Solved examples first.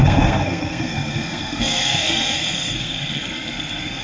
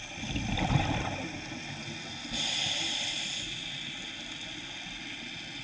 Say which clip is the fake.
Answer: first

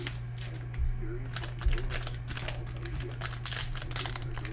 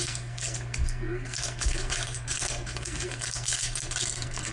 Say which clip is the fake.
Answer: second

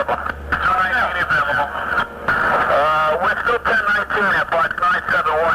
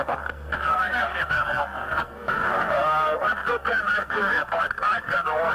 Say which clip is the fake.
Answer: second